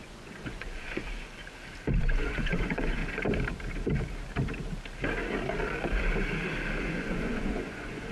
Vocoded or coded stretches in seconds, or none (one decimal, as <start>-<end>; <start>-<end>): 0.0-1.4; 2.0-3.0; 6.8-8.1